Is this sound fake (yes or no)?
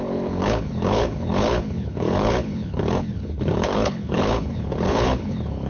yes